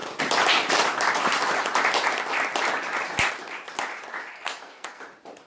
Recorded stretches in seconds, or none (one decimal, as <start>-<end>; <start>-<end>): 0.0-4.3; 5.0-5.5